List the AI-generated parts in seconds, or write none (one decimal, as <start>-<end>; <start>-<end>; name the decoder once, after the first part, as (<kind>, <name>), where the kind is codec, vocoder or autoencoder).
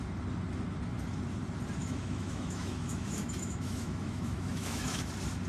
1.8-5.1 (autoencoder, DAC-VAE)